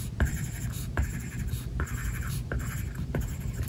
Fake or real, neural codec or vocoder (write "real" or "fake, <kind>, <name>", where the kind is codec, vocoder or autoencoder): fake, vocoder, BigVGAN v2